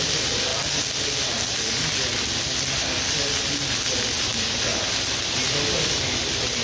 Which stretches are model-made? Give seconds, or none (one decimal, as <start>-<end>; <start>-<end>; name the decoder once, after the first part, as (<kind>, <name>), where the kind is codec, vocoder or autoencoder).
none